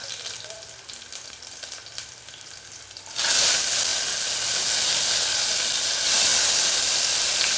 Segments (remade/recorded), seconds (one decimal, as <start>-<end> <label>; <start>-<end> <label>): 0.0-7.6 recorded

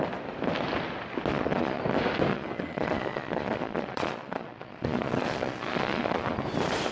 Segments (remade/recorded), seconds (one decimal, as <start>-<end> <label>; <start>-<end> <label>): 0.0-1.3 recorded; 1.3-1.8 remade; 1.8-2.3 recorded; 2.3-6.4 remade; 6.4-6.9 recorded